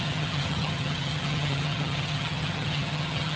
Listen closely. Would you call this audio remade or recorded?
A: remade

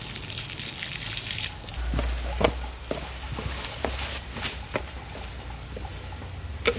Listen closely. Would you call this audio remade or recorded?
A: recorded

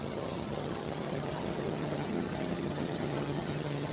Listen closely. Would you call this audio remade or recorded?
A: remade